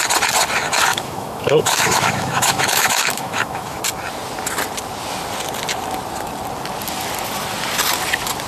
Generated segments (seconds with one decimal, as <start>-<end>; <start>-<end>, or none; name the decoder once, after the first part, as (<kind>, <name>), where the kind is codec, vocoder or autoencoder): 0.9-3.8 (autoencoder, DAC-VAE)